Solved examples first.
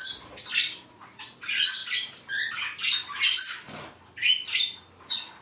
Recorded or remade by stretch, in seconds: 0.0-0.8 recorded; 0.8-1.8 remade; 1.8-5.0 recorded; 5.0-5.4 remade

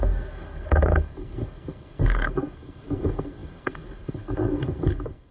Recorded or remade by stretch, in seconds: 0.0-5.3 remade

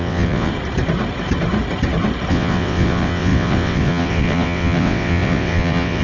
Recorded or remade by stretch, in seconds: 0.0-0.5 remade; 0.5-2.3 recorded; 2.3-6.0 remade

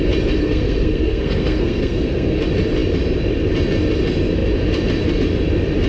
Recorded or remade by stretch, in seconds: 0.0-0.4 recorded; 0.4-2.4 remade; 2.4-5.9 recorded